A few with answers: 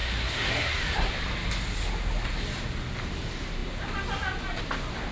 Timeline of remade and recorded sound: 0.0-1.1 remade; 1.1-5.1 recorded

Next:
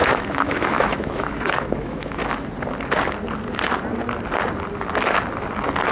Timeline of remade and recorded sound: 0.0-2.2 remade; 2.2-5.9 recorded

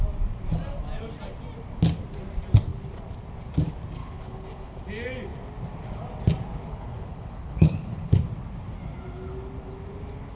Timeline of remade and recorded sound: 0.0-4.0 recorded; 4.0-4.8 remade; 4.8-6.7 recorded; 6.7-8.3 remade; 8.3-10.4 recorded

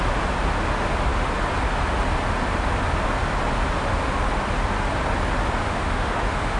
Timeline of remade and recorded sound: 0.0-5.6 recorded; 5.6-6.6 remade

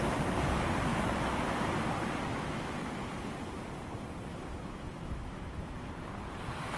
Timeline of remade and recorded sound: 0.0-0.9 recorded; 0.9-1.5 remade; 1.5-2.3 recorded; 2.3-2.8 remade; 2.8-4.3 recorded; 4.3-5.9 remade; 5.9-6.8 recorded

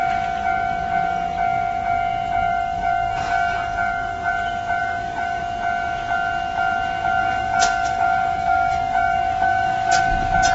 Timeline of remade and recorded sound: 0.0-2.5 recorded; 2.5-4.3 remade; 4.3-4.8 recorded; 4.8-5.4 remade; 5.4-7.2 recorded; 7.2-10.0 remade; 10.0-10.5 recorded

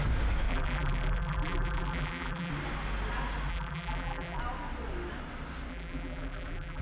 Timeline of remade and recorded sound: 0.0-0.5 recorded; 0.5-2.5 remade; 2.5-3.5 recorded; 3.5-4.4 remade; 4.4-5.7 recorded; 5.7-6.8 remade